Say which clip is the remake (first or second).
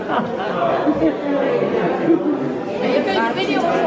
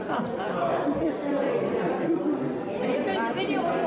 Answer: second